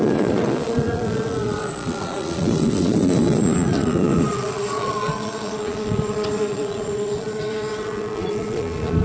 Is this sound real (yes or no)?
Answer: no